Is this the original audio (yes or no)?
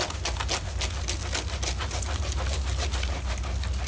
yes